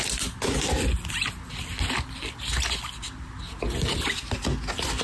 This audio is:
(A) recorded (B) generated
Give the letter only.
A